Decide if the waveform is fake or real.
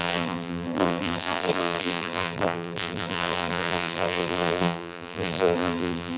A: fake